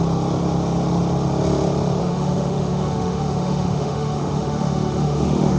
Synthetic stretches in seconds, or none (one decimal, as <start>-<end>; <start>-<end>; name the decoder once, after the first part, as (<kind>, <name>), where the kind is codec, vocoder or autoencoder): 2.0-5.6 (autoencoder, DAC-VAE)